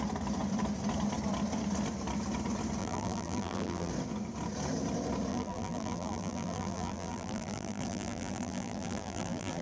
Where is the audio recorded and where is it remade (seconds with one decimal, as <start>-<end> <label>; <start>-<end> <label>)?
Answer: 0.0-2.8 recorded; 2.8-3.9 remade; 3.9-5.3 recorded; 5.3-9.6 remade